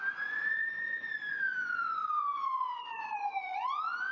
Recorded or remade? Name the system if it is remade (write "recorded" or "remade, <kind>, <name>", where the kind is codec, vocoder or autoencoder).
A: remade, vocoder, Vocos